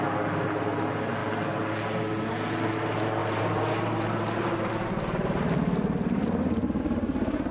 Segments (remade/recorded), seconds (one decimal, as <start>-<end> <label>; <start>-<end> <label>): 0.0-3.2 recorded; 3.2-6.8 remade; 6.8-7.5 recorded